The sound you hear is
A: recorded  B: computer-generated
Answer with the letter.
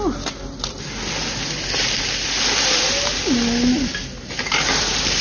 A